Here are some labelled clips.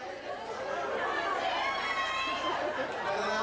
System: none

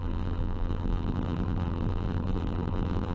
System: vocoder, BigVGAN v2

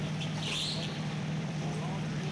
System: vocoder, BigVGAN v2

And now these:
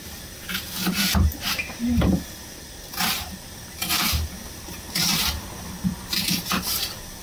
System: vocoder, BigVGAN v2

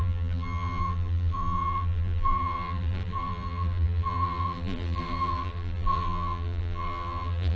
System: vocoder, BigVGAN v2